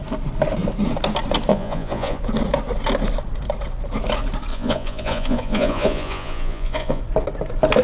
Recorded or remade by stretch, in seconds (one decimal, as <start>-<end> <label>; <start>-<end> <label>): 0.0-1.5 recorded; 1.5-2.2 remade; 2.2-4.5 recorded; 4.5-7.0 remade; 7.0-7.8 recorded